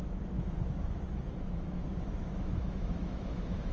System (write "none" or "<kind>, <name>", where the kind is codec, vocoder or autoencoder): autoencoder, DAC-VAE